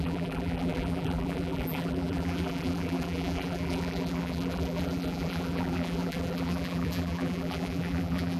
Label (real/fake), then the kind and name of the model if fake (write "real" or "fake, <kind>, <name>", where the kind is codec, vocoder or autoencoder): fake, vocoder, BigVGAN v2